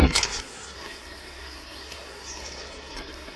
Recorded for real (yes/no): no